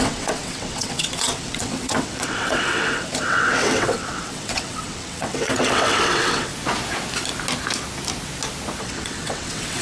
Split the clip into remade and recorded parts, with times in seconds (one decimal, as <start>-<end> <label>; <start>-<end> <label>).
0.0-6.5 remade; 6.5-8.8 recorded; 8.8-9.8 remade